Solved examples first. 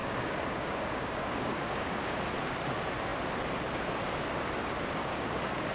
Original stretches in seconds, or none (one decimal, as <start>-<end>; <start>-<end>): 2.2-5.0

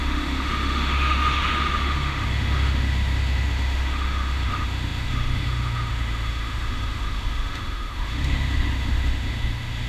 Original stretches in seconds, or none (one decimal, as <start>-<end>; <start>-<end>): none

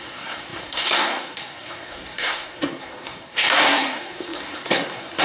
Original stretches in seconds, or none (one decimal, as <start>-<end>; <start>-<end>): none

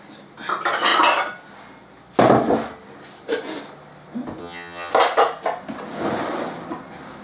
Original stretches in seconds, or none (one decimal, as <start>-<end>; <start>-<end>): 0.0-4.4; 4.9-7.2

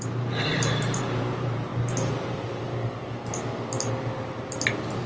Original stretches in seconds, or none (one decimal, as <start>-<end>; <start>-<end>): 1.7-5.1

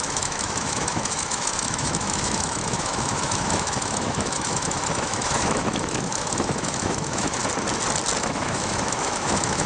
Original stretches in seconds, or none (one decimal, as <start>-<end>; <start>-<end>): 7.4-8.2

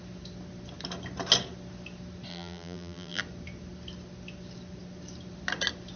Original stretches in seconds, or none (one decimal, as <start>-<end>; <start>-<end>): 0.0-2.3; 3.2-6.0